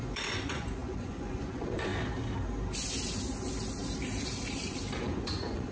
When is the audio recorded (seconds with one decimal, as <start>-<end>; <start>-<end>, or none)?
1.9-5.0